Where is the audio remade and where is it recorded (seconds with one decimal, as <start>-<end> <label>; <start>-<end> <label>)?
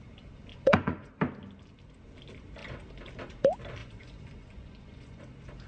0.0-0.5 recorded; 0.5-1.1 remade; 1.1-3.8 recorded; 3.8-5.2 remade; 5.2-5.7 recorded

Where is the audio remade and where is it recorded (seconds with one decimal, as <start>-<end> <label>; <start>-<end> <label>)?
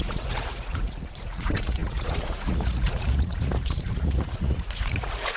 0.0-5.4 remade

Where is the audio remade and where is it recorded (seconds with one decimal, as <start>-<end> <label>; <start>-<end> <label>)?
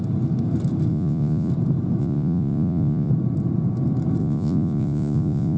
0.0-0.9 recorded; 0.9-1.5 remade; 1.5-2.0 recorded; 2.0-3.1 remade; 3.1-4.2 recorded; 4.2-5.6 remade